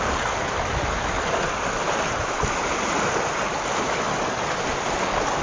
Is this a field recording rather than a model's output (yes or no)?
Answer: yes